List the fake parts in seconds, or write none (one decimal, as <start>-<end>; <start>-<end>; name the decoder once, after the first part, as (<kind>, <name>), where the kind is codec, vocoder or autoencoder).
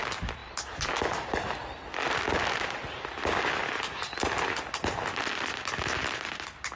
none